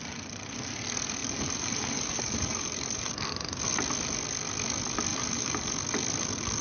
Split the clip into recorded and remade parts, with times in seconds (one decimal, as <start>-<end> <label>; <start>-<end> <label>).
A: 0.0-1.2 recorded; 1.2-3.1 remade; 3.1-5.1 recorded; 5.1-5.7 remade; 5.7-6.6 recorded

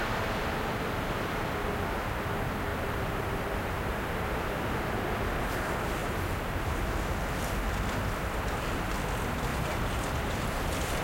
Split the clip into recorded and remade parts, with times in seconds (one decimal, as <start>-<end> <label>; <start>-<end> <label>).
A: 0.0-2.7 recorded; 2.7-4.8 remade; 4.8-6.0 recorded; 6.0-6.8 remade; 6.8-9.5 recorded; 9.5-11.0 remade

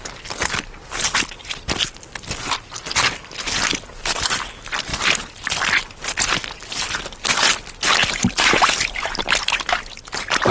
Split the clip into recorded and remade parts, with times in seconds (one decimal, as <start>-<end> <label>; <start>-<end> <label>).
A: 0.0-8.0 recorded; 8.0-9.7 remade; 9.7-10.5 recorded

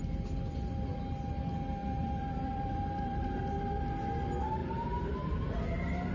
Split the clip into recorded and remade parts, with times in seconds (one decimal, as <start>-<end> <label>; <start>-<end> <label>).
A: 0.0-1.8 recorded; 1.8-3.4 remade; 3.4-4.6 recorded; 4.6-5.6 remade; 5.6-6.1 recorded

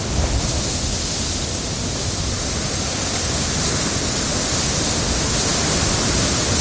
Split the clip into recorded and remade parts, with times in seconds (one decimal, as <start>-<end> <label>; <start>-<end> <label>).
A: 0.0-6.6 recorded

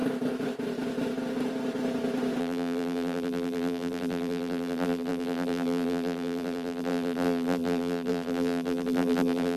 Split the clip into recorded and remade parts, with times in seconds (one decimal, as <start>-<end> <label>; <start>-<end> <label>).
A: 0.0-2.4 recorded; 2.4-9.6 remade

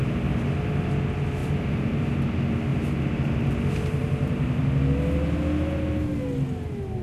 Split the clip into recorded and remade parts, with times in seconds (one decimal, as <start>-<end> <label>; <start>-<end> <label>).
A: 0.0-1.4 recorded; 1.4-2.1 remade; 2.1-2.7 recorded; 2.7-3.3 remade; 3.3-4.0 recorded; 4.0-4.6 remade; 4.6-7.0 recorded